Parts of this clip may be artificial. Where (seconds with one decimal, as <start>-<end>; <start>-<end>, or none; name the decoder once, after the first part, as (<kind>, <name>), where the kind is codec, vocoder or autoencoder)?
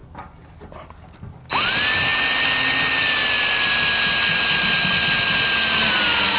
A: none